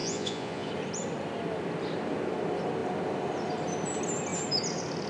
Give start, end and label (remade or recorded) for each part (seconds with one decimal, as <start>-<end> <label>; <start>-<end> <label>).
0.0-0.7 remade; 0.7-5.1 recorded